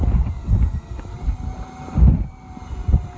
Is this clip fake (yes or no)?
no